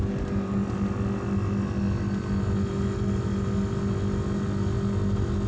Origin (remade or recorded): recorded